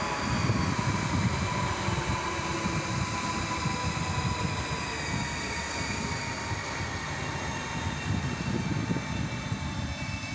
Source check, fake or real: real